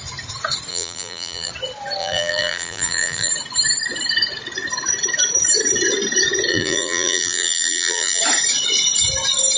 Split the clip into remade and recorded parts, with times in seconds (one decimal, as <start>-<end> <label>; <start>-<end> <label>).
0.0-0.7 recorded; 0.7-1.5 remade; 1.5-2.0 recorded; 2.0-3.3 remade; 3.3-6.5 recorded; 6.5-8.2 remade; 8.2-9.6 recorded